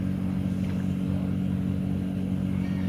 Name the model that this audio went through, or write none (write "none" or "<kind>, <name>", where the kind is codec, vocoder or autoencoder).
none